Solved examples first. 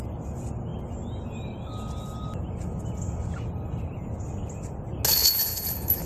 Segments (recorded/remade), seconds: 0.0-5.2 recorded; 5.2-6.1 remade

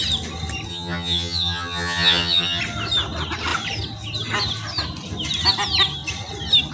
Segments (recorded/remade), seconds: 0.0-0.7 recorded; 0.7-2.6 remade; 2.6-6.7 recorded

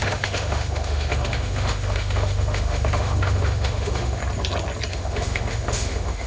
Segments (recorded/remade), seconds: 0.0-4.2 remade; 4.2-4.9 recorded; 4.9-6.3 remade

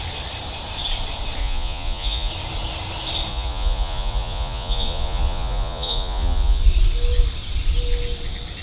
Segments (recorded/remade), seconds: 0.0-1.4 recorded; 1.4-2.3 remade; 2.3-3.3 recorded; 3.3-6.6 remade; 6.6-8.6 recorded

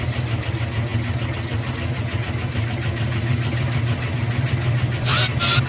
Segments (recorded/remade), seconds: 0.0-5.7 recorded

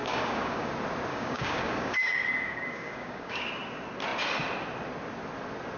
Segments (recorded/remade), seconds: 0.0-0.7 remade; 0.7-1.1 recorded; 1.1-3.5 remade; 3.5-5.8 recorded

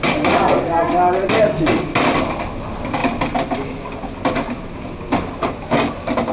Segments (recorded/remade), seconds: 0.0-6.3 recorded

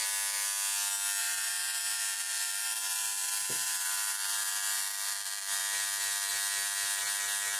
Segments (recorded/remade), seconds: 0.0-1.2 recorded; 1.2-5.6 remade; 5.6-7.6 recorded